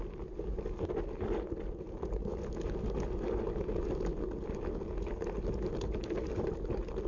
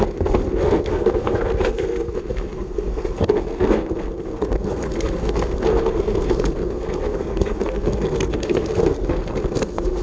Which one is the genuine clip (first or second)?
first